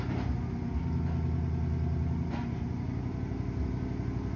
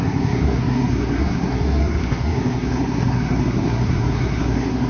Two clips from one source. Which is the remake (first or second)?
second